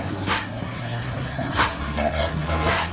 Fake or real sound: fake